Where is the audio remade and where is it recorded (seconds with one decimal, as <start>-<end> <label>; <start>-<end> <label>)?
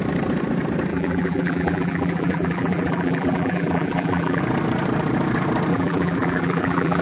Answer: 0.0-0.9 recorded; 0.9-4.4 remade; 4.4-5.7 recorded; 5.7-7.0 remade